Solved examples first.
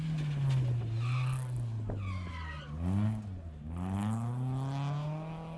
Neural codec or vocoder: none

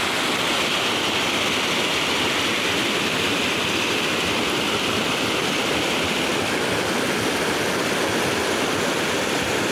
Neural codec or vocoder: none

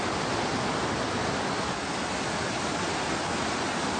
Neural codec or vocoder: none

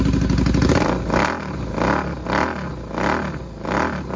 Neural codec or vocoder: none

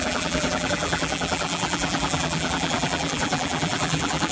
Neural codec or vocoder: vocoder, BigVGAN v2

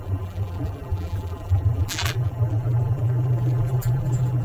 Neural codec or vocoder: vocoder, BigVGAN v2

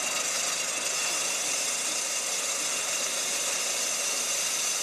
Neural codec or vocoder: none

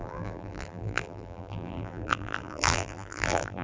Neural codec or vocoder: vocoder, BigVGAN v2